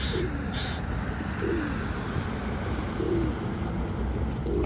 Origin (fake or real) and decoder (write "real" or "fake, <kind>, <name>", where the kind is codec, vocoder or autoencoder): real